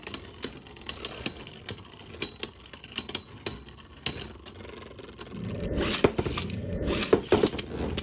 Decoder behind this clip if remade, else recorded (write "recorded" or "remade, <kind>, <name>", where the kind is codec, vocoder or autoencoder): recorded